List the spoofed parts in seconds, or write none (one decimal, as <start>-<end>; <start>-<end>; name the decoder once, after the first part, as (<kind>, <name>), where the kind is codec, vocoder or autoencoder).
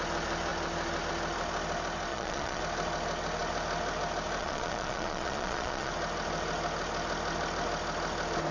2.1-2.6 (vocoder, Vocos); 4.4-5.9